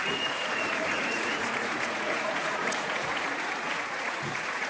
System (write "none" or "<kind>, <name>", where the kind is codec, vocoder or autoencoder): vocoder, Vocos